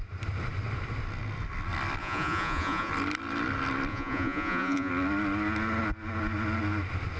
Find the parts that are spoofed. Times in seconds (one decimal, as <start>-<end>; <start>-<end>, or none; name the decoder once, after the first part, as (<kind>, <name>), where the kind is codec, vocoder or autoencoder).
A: 2.0-2.9 (vocoder, Vocos); 3.9-4.9